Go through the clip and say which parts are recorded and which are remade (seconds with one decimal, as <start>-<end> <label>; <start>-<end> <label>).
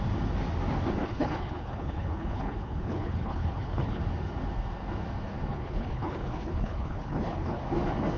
0.0-1.0 recorded; 1.0-4.0 remade; 4.0-5.5 recorded; 5.5-7.6 remade; 7.6-8.2 recorded